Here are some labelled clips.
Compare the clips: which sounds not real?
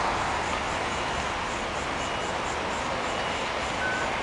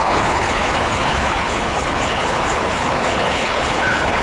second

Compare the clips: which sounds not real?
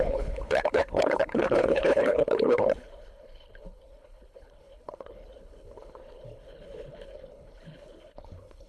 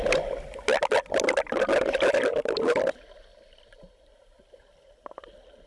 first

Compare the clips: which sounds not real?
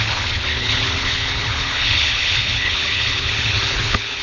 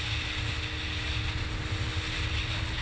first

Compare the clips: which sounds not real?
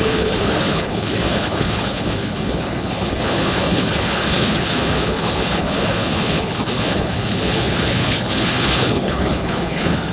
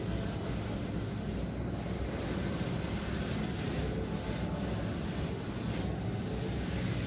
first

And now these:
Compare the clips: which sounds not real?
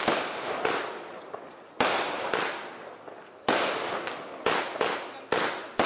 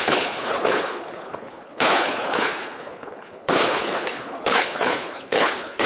second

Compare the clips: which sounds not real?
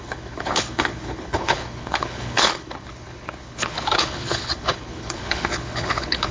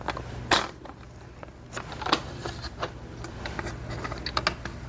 first